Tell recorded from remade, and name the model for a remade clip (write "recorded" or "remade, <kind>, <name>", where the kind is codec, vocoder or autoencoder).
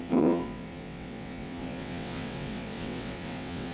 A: remade, vocoder, WaveNeXt